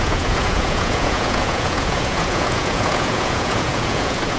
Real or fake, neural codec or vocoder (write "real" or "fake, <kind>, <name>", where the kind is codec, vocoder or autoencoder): fake, vocoder, Vocos